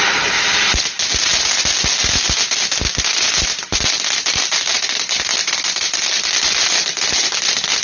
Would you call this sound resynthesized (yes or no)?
no